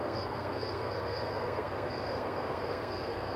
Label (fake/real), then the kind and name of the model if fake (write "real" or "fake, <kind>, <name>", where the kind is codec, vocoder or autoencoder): fake, codec, SNAC